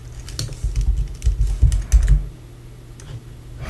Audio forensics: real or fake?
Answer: real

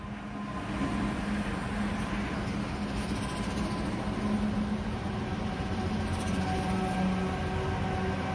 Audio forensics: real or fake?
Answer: real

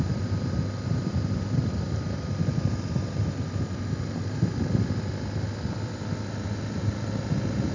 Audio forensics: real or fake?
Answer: real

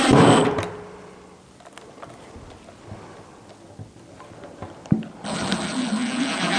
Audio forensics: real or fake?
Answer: real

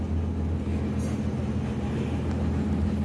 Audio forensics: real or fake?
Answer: real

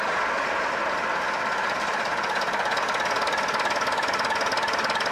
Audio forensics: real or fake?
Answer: real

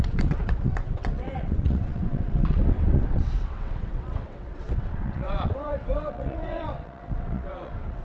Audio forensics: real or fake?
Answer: fake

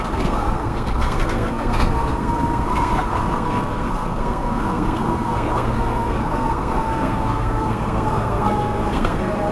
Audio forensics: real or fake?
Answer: fake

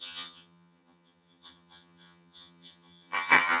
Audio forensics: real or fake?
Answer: fake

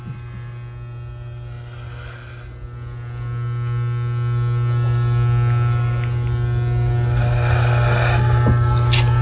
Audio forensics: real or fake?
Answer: real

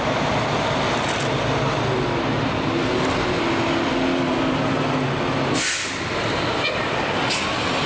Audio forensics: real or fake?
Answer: real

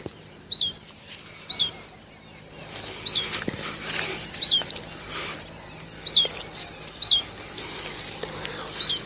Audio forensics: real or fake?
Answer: real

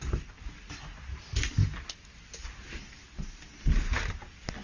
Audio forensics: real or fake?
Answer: real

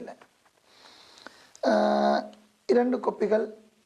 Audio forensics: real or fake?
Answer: real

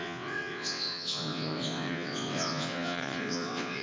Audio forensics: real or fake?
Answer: fake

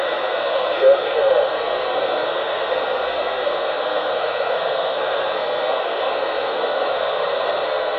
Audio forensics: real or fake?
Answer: fake